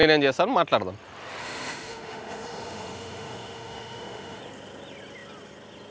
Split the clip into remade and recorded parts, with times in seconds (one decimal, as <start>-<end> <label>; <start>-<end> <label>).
0.0-1.4 recorded; 1.4-4.4 remade; 4.4-5.9 recorded